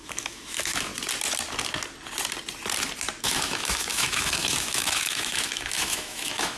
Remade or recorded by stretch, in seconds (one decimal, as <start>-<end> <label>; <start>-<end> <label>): 0.0-0.9 remade; 0.9-3.2 recorded; 3.2-6.6 remade